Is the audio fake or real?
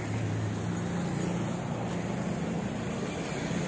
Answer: real